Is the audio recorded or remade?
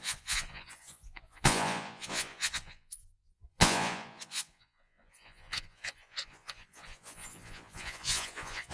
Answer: remade